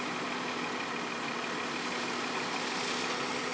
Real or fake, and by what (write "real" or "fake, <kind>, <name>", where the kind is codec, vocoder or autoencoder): real